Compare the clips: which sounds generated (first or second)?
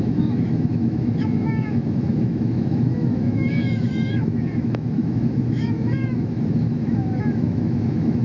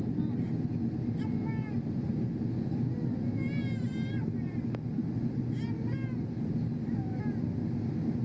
first